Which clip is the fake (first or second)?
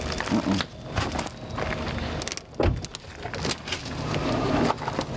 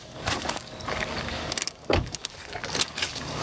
second